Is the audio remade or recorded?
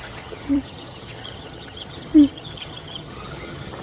remade